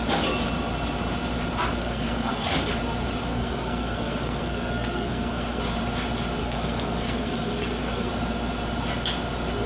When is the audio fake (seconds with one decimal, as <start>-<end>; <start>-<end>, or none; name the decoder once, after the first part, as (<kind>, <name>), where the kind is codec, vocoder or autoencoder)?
1.8-2.5 (codec, SNAC); 3.3-5.6; 6.4-8.1